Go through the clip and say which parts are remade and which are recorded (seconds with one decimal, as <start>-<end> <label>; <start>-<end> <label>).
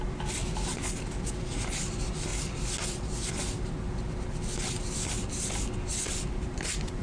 0.0-7.0 recorded